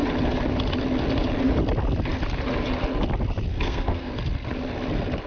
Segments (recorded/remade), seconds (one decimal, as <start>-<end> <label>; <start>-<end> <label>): 0.0-3.5 recorded; 3.5-4.1 remade; 4.1-5.3 recorded